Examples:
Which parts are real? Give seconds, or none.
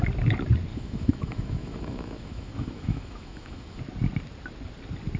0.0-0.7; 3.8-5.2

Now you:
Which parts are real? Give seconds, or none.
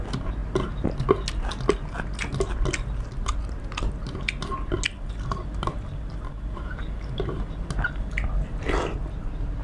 0.0-9.6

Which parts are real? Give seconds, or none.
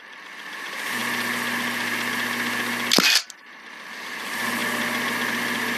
0.0-5.8